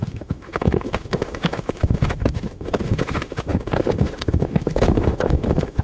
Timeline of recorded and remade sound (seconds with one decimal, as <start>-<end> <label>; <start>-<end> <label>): 0.0-5.8 remade